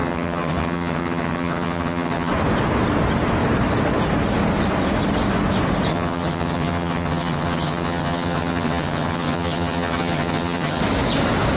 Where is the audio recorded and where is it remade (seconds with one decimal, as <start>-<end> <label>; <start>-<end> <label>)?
0.0-2.3 remade; 2.3-5.9 recorded; 5.9-10.8 remade; 10.8-11.6 recorded

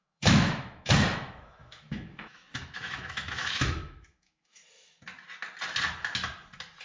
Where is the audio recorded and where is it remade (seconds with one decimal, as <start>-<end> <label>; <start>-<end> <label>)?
0.0-4.6 remade; 4.6-6.8 recorded

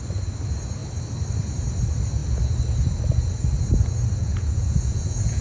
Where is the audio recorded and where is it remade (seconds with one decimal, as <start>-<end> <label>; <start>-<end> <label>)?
0.0-4.2 recorded; 4.2-5.4 remade

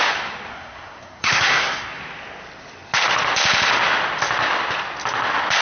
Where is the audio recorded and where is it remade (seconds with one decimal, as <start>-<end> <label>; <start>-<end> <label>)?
0.0-0.5 recorded; 0.5-2.0 remade; 2.0-5.6 recorded

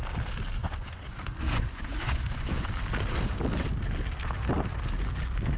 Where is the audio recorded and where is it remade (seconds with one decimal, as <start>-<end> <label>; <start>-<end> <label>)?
0.0-0.6 recorded; 0.6-2.7 remade; 2.7-5.6 recorded

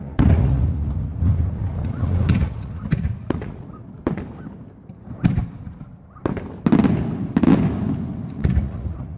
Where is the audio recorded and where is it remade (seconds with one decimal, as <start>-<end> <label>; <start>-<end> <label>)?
0.0-3.8 remade; 3.8-8.3 recorded; 8.3-9.2 remade